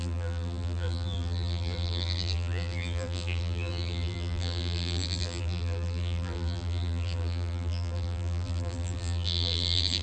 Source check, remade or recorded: remade